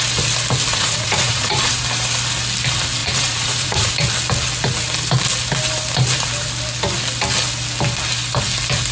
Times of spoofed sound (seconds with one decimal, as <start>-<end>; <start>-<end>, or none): 0.7-1.7; 3.0-3.9